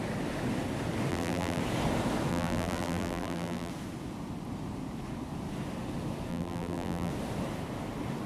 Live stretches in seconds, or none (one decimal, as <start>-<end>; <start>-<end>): 0.0-1.1; 1.6-2.3; 3.7-6.3; 7.1-8.3